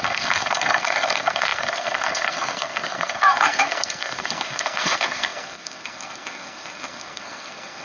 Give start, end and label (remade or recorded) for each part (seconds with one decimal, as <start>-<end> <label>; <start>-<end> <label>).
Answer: 0.0-7.8 remade